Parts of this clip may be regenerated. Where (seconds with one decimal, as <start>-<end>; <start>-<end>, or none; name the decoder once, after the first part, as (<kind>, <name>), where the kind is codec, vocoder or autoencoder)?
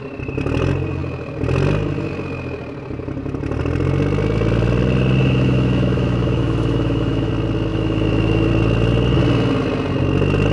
5.2-7.3 (autoencoder, DAC-VAE); 7.7-8.5